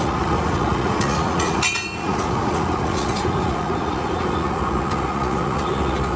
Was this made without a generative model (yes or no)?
no